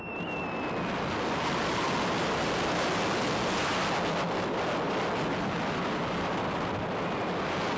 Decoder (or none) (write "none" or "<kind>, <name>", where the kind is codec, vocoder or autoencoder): none